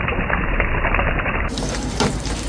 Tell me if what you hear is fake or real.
fake